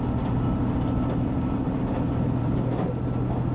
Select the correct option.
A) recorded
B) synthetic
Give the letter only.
A